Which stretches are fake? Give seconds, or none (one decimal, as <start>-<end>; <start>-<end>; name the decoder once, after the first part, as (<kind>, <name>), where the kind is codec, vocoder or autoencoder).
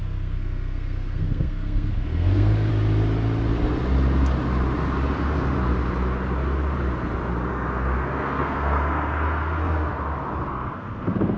0.0-2.7 (codec, SNAC); 7.5-9.9; 10.5-11.4